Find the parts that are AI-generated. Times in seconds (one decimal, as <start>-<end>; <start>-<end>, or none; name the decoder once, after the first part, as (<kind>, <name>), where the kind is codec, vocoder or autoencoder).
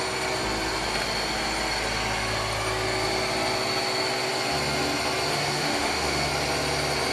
5.3-6.3 (autoencoder, DAC-VAE)